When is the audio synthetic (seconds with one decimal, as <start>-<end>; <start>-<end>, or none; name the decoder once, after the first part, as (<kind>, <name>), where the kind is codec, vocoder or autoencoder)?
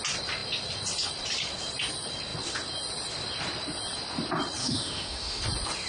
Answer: 4.6-5.4 (autoencoder, DAC-VAE)